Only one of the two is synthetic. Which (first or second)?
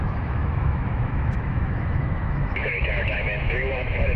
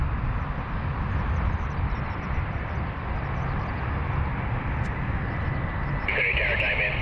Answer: first